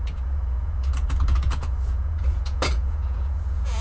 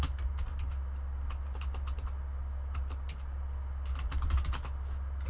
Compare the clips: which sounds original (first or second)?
second